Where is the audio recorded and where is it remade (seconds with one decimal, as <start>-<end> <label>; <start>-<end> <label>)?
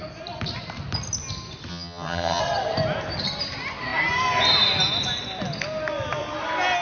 0.0-1.7 recorded; 1.7-2.4 remade; 2.4-6.8 recorded